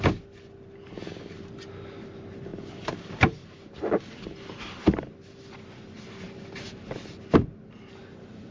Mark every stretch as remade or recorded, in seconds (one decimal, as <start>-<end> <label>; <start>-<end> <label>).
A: 0.0-8.5 recorded